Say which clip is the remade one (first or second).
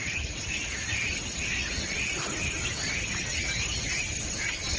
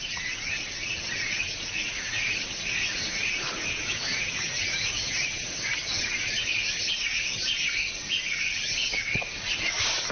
second